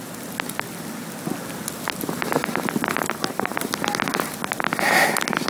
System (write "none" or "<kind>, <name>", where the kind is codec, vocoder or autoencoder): none